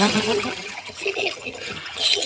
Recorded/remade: remade